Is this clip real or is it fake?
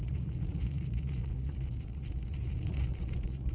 fake